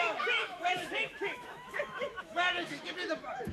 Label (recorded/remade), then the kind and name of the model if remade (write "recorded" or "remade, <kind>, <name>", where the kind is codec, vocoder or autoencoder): remade, autoencoder, DAC-VAE